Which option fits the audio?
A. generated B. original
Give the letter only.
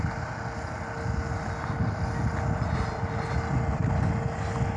B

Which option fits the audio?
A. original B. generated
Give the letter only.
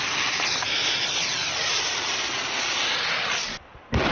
A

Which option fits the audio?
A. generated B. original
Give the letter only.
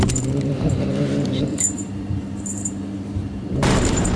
A